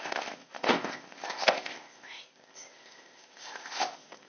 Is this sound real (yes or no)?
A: no